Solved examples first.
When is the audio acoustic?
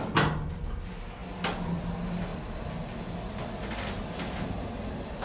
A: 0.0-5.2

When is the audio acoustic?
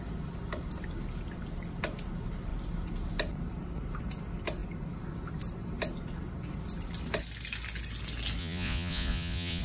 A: 0.0-8.4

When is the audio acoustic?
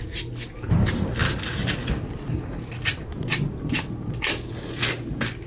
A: 0.0-5.5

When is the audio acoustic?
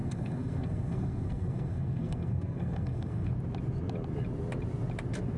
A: 3.3-5.4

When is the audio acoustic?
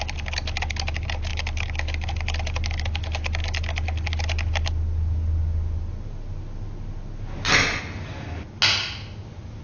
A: 0.0-9.6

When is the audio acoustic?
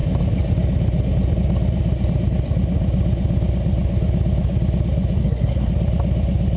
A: 0.0-5.2; 5.7-6.6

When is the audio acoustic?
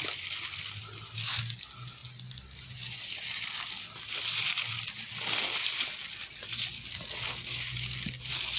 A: 0.0-8.6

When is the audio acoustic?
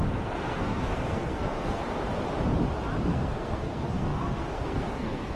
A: 1.8-3.1